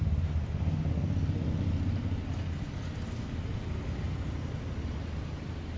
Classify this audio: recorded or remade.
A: recorded